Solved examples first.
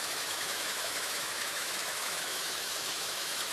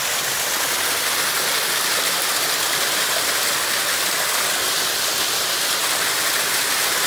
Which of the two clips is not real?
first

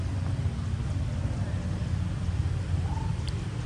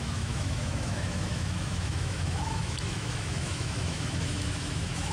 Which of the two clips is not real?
second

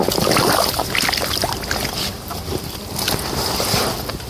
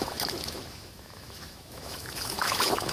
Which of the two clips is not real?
second